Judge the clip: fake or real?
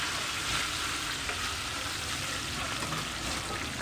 real